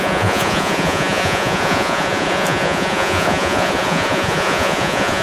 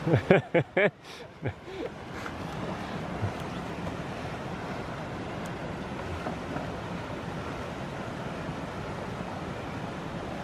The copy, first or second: first